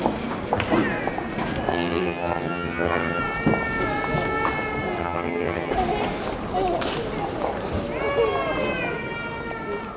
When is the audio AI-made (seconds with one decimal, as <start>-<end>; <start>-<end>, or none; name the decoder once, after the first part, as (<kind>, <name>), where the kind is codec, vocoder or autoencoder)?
1.7-3.2 (vocoder, HiFi-GAN); 5.0-5.7

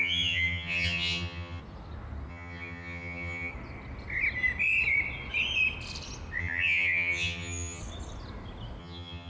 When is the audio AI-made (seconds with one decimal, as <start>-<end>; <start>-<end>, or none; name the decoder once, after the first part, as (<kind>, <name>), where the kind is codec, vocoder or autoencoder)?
0.0-1.6 (vocoder, HiFi-GAN); 2.3-3.5; 6.4-7.8; 8.8-9.3

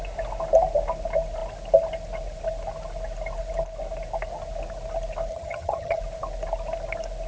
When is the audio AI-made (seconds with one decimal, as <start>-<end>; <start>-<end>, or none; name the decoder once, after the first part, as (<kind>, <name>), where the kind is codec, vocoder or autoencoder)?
5.3-6.0 (vocoder, HiFi-GAN)

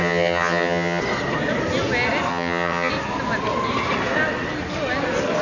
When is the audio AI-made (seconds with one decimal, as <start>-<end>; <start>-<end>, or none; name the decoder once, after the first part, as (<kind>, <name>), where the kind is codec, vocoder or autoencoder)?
0.0-1.0 (vocoder, HiFi-GAN); 2.3-2.9

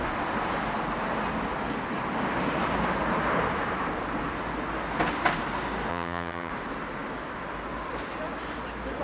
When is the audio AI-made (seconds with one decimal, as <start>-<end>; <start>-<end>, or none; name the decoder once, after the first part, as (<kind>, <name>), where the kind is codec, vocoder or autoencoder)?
5.9-6.5 (vocoder, HiFi-GAN)

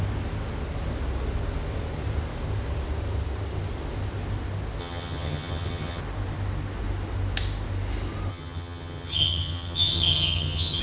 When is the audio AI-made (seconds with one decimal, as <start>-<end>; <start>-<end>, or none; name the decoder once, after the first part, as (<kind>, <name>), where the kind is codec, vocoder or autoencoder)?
4.8-6.0 (vocoder, HiFi-GAN); 8.3-10.8

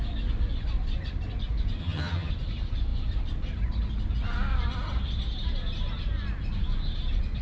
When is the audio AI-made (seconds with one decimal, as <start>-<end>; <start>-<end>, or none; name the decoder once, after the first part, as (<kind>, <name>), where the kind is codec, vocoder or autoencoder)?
1.8-2.3 (vocoder, HiFi-GAN)

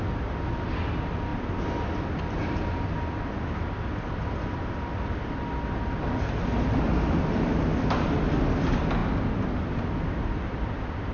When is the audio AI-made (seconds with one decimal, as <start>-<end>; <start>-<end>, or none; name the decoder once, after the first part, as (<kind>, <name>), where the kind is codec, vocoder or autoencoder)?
none